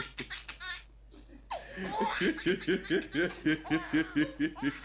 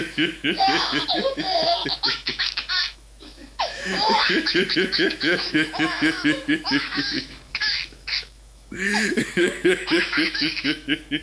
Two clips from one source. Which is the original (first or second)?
first